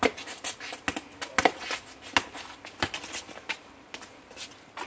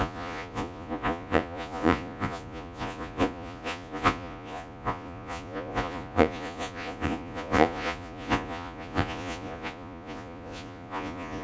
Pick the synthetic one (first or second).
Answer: second